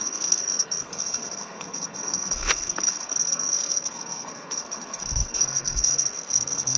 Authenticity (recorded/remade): remade